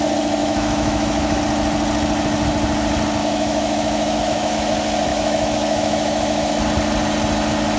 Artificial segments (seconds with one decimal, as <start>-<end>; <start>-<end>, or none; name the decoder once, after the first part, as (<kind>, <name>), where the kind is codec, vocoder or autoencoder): 0.4-1.4 (autoencoder, DAC-VAE); 3.2-4.5; 5.1-6.5